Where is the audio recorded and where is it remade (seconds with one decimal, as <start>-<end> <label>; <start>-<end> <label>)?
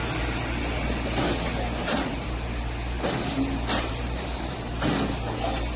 0.0-3.9 recorded; 3.9-4.7 remade; 4.7-5.8 recorded